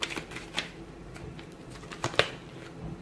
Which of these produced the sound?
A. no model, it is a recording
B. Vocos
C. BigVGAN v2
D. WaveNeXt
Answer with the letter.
C